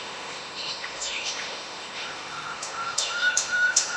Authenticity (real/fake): fake